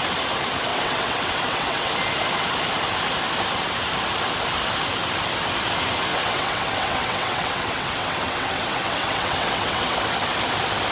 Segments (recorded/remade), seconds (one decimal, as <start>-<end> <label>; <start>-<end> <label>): 0.0-0.7 recorded; 0.7-1.9 remade; 1.9-6.1 recorded; 6.1-10.0 remade; 10.0-10.9 recorded